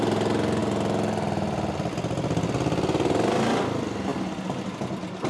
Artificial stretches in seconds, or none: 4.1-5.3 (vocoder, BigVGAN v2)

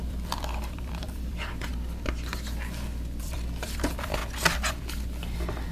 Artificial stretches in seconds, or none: 0.0-1.7 (vocoder, BigVGAN v2); 3.2-4.2; 4.7-5.7

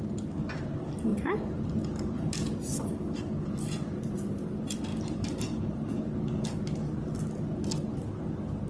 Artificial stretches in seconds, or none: 1.1-3.6 (vocoder, BigVGAN v2); 4.9-5.7